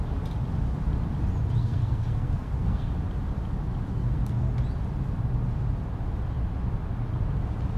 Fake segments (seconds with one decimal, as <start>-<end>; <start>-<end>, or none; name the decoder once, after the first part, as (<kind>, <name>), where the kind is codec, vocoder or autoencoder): 1.6-2.9 (codec, SNAC); 3.9-4.5